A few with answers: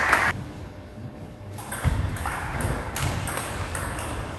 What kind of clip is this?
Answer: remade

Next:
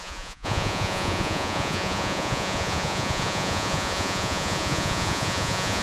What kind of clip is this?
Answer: remade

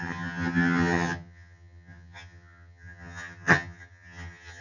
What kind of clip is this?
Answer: remade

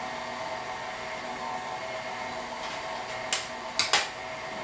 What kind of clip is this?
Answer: recorded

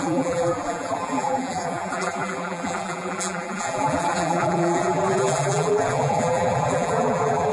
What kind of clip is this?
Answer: remade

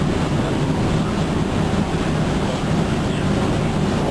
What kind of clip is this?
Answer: recorded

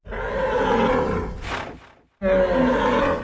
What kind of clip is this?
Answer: recorded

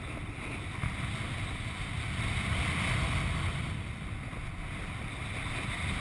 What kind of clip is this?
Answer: recorded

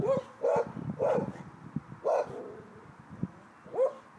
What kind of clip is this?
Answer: recorded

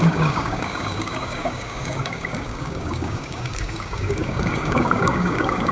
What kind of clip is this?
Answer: remade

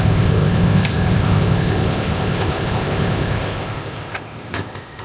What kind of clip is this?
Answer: remade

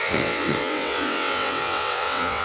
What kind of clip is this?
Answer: remade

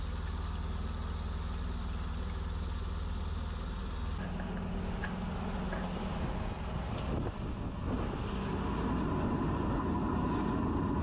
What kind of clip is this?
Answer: recorded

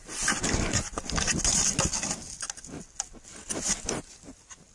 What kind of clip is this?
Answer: recorded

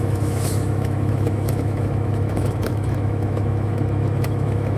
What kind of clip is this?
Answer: remade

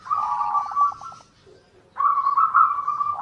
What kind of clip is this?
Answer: recorded